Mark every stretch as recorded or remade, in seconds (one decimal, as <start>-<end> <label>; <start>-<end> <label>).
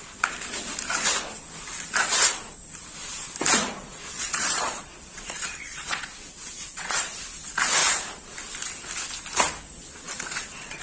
0.0-3.6 recorded; 3.6-7.2 remade; 7.2-9.8 recorded; 9.8-10.8 remade